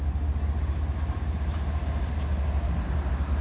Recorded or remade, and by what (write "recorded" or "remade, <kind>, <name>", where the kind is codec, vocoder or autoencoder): recorded